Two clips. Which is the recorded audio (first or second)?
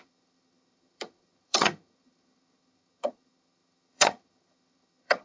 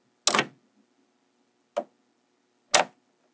second